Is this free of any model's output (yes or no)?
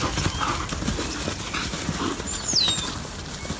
yes